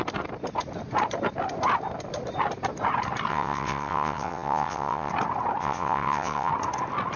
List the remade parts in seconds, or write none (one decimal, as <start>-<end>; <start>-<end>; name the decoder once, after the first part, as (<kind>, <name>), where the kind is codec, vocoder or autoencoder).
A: 3.3-5.1 (vocoder, WaveNeXt); 5.6-6.5